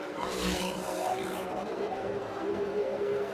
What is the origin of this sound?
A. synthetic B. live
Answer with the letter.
A